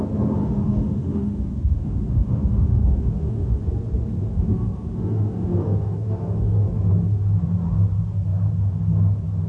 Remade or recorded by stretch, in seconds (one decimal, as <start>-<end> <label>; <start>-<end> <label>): 0.0-0.4 recorded; 0.4-3.6 remade; 3.6-4.3 recorded; 4.3-6.9 remade; 6.9-9.5 recorded